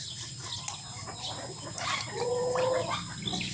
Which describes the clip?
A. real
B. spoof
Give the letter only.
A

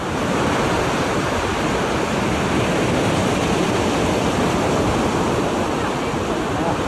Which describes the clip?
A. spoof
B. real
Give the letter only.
B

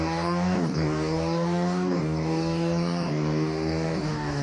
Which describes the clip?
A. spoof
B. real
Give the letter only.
A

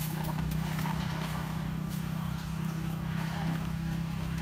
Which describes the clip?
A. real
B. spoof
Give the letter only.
B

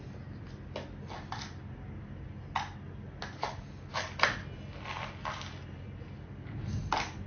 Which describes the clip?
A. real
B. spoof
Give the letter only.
A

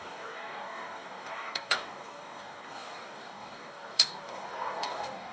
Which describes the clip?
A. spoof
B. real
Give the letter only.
A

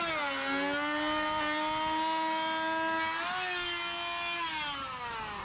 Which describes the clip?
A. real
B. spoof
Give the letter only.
A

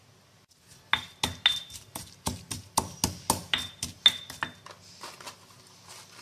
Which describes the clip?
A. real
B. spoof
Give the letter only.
A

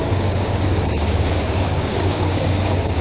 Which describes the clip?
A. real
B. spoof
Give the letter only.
B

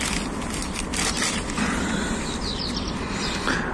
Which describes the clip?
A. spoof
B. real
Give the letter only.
B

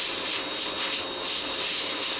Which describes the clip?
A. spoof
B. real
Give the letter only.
B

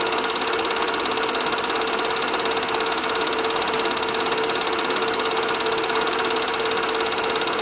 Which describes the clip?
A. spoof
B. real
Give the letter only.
B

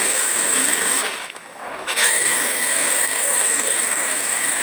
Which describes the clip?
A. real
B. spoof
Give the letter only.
B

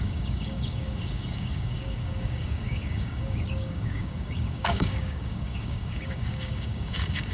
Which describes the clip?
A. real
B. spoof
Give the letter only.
B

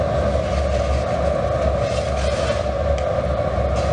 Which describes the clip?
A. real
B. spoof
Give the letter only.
A